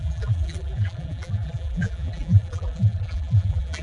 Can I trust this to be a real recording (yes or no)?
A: no